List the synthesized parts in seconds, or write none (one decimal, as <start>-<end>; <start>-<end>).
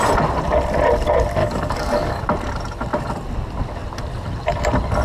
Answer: 1.4-2.2